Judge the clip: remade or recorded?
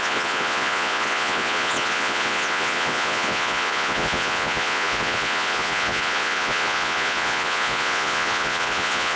remade